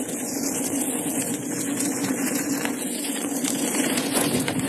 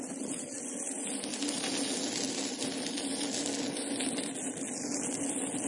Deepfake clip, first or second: first